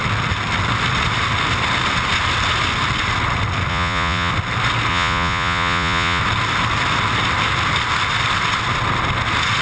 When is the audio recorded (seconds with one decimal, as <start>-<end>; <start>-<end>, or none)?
0.0-3.7; 4.3-4.9; 6.2-9.6